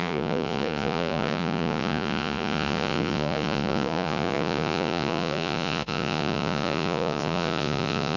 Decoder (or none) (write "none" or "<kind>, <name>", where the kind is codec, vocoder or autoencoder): vocoder, Vocos